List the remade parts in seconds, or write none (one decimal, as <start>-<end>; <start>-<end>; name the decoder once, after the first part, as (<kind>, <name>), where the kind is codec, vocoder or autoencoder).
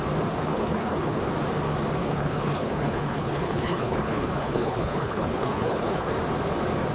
0.4-1.2 (codec, HILCodec); 2.0-6.1